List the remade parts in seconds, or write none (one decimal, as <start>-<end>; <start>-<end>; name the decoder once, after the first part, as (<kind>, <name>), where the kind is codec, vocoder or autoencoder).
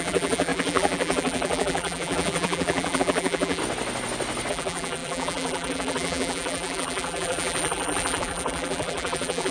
0.0-3.6 (vocoder, BigVGAN v2); 4.5-9.5